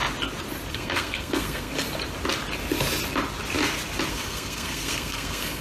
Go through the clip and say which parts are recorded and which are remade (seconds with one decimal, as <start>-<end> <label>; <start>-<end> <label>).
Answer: 0.0-0.7 recorded; 0.7-1.7 remade; 1.7-4.1 recorded; 4.1-5.6 remade